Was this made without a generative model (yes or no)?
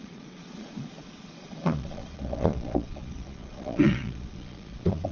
no